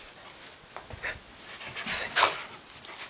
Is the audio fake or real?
real